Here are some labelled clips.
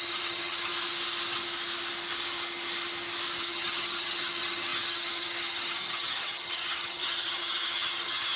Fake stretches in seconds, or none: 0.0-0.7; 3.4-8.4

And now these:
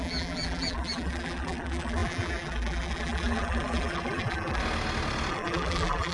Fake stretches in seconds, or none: 0.0-4.6; 5.3-6.1

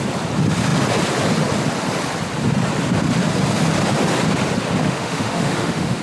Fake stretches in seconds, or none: 4.8-6.0